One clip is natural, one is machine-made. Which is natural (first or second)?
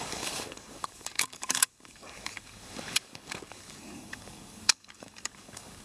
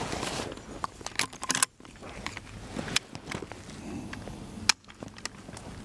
second